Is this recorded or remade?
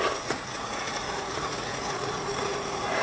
remade